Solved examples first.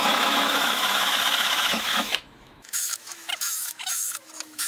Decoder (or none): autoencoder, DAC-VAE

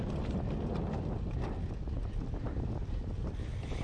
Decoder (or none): none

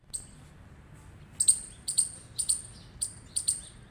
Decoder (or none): none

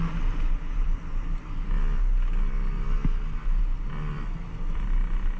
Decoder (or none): none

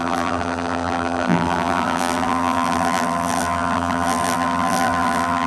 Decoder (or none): vocoder, BigVGAN v2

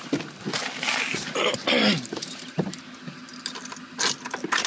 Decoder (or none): none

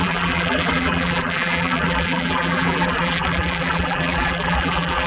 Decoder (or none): vocoder, BigVGAN v2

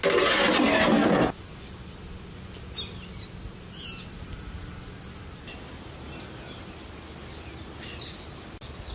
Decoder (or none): none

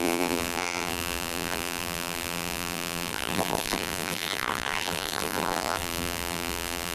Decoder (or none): vocoder, BigVGAN v2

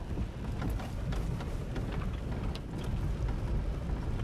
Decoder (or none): none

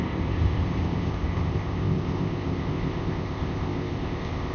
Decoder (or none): codec, ZipCodec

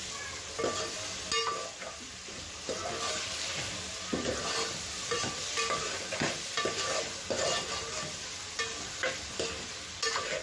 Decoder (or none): none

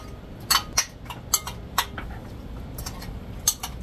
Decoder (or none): none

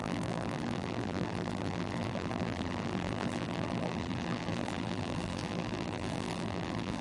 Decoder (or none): vocoder, BigVGAN v2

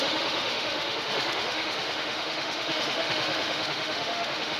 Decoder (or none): autoencoder, DAC-VAE